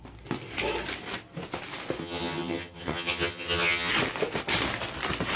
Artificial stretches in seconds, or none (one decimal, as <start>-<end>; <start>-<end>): 2.0-3.9